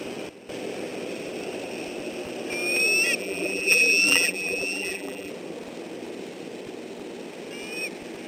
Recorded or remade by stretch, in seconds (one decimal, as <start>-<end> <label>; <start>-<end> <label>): 0.0-3.2 recorded; 3.2-5.3 remade; 5.3-8.3 recorded